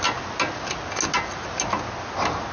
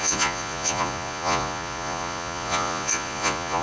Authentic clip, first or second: first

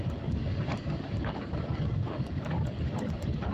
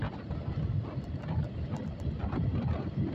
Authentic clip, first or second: second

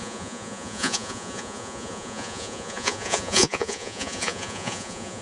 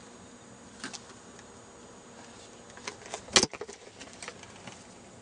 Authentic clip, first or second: second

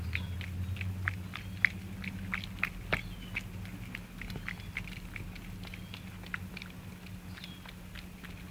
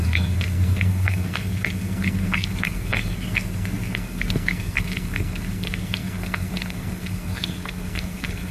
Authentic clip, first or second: first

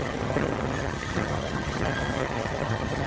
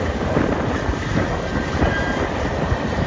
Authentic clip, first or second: second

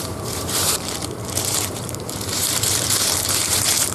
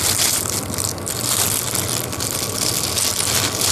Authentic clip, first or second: second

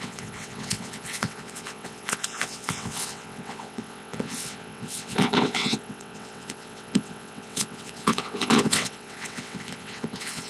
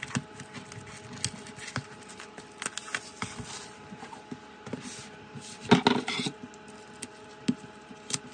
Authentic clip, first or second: second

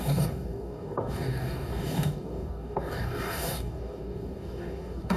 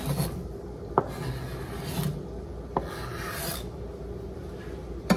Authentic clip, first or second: second